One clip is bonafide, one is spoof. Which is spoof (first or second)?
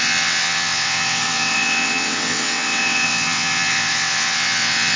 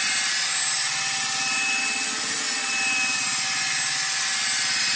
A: first